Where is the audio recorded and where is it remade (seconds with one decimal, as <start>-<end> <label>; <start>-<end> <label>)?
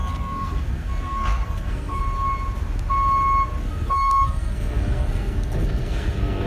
0.0-2.0 remade; 2.0-3.6 recorded; 3.6-6.5 remade